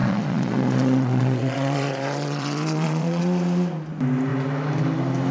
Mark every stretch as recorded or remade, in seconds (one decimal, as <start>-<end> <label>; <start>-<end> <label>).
0.0-3.2 remade; 3.2-5.3 recorded